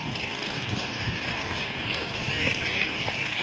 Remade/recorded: remade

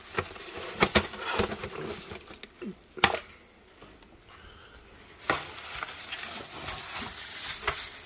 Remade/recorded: recorded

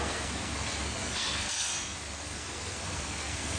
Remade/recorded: remade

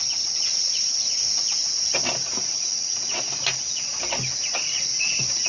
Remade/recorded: recorded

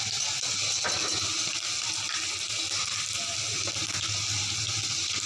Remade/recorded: recorded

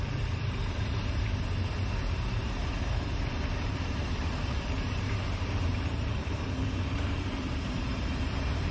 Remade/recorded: remade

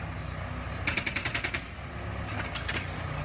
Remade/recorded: recorded